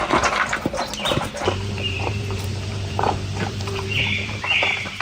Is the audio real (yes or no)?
no